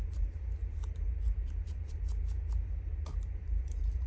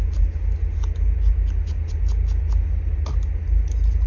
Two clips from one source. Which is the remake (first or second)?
first